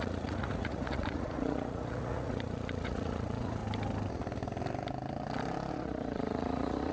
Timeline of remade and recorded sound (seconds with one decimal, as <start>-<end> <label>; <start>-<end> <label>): 0.0-3.6 remade; 3.6-5.7 recorded; 5.7-6.9 remade